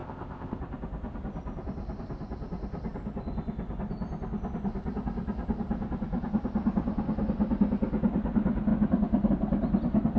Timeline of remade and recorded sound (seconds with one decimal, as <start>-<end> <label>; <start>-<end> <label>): 0.0-0.6 remade; 0.6-10.2 recorded